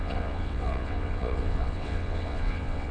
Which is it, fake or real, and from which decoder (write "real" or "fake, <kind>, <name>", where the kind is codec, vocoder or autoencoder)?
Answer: fake, vocoder, WaveNeXt